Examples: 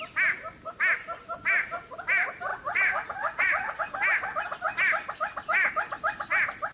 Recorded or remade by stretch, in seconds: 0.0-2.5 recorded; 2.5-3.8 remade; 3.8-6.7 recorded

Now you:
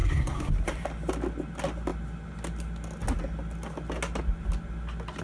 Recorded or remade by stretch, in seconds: 0.0-0.5 remade; 0.5-5.2 recorded

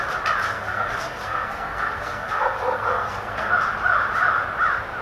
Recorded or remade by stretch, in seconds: 0.0-0.5 recorded; 0.5-3.5 remade; 3.5-5.0 recorded

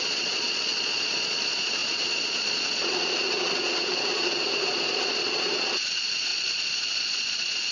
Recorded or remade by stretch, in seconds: 0.0-7.7 remade

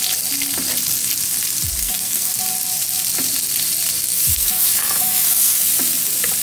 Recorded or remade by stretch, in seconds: 0.0-1.8 recorded; 1.8-2.4 remade; 2.4-4.1 recorded; 4.1-5.7 remade; 5.7-6.4 recorded

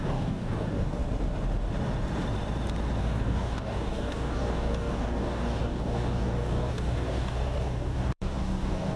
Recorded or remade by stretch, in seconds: 0.0-1.0 remade; 1.0-3.0 recorded; 3.0-9.0 remade

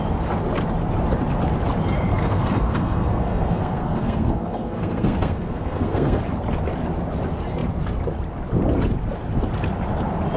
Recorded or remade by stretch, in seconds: 0.0-2.1 recorded; 2.1-6.2 remade; 6.2-10.4 recorded